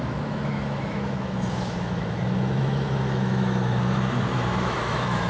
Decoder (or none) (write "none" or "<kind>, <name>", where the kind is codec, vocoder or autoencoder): autoencoder, DAC-VAE